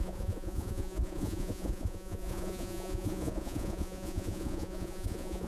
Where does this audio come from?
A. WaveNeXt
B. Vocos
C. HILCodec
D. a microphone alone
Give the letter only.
B